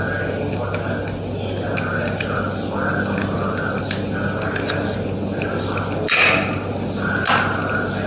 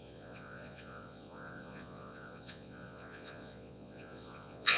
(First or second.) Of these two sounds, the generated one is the second